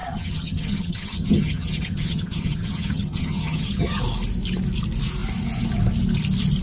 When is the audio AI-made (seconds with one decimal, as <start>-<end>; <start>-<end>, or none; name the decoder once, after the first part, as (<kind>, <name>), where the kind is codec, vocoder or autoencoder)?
0.0-4.0 (vocoder, HiFi-GAN)